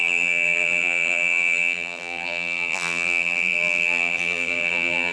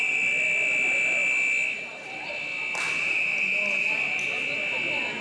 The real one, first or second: second